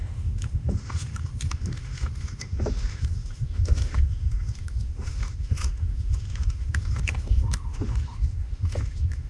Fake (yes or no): yes